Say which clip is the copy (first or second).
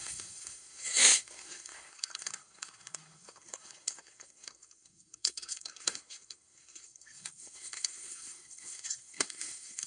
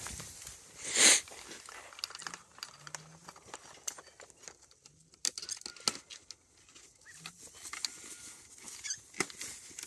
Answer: first